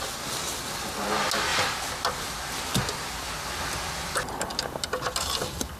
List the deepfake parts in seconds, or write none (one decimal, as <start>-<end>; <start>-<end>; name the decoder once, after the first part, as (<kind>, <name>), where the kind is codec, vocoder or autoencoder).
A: none